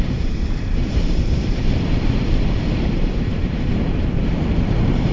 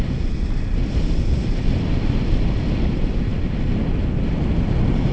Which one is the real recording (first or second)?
second